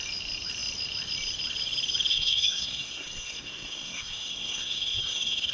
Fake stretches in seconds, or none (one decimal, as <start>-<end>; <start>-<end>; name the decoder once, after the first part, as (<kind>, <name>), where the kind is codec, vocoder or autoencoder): 2.1-5.5 (codec, SNAC)